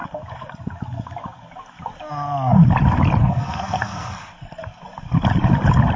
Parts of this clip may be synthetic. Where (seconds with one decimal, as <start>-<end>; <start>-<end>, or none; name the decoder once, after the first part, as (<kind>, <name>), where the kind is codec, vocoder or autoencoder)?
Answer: 3.2-4.6 (codec, SNAC)